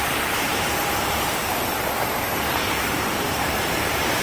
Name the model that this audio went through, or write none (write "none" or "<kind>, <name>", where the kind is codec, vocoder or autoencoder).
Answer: vocoder, BigVGAN v2